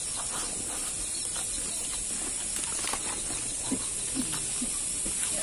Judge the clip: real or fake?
real